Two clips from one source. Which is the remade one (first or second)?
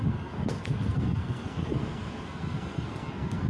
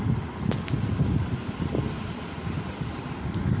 first